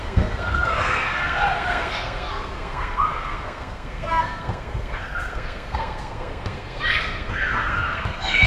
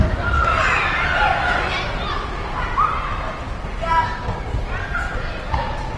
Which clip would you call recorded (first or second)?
second